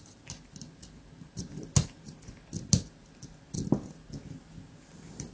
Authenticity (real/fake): real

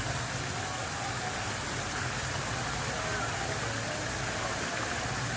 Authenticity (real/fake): real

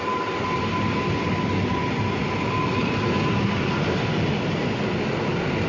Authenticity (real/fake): real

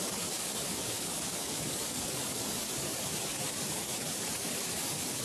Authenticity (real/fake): fake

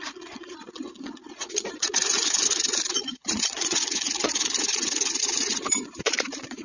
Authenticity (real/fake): fake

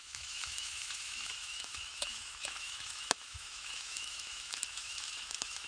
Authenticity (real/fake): fake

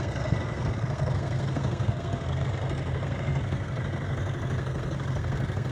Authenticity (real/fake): fake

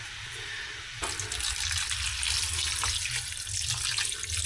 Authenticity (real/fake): real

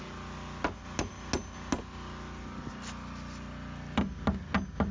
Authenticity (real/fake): real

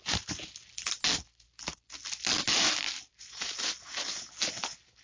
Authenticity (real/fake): real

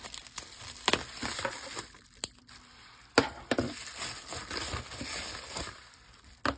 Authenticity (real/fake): real